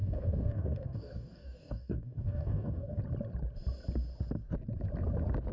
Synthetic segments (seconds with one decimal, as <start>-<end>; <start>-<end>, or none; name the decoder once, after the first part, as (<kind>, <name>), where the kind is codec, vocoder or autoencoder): 0.0-3.0 (codec, DAC)